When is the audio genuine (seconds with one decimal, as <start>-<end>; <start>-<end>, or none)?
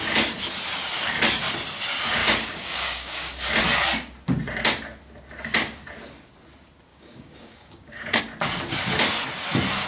0.0-2.2; 3.3-6.9; 8.2-9.9